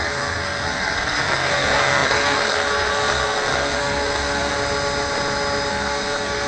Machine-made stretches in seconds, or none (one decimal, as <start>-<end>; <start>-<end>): 0.0-4.5; 5.7-6.5